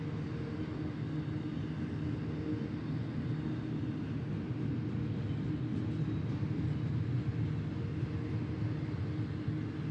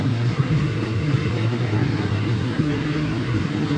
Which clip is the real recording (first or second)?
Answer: first